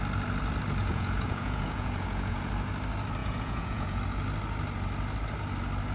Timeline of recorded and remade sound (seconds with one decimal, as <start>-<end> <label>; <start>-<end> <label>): 0.0-0.8 recorded; 0.8-2.5 remade; 2.5-3.2 recorded; 3.2-4.0 remade; 4.0-5.9 recorded